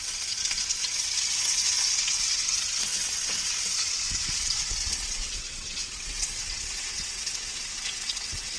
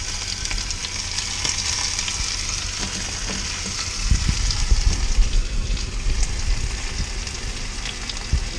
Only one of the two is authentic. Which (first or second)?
second